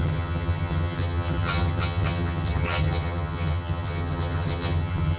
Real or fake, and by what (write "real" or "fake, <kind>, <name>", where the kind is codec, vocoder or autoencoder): fake, vocoder, HiFi-GAN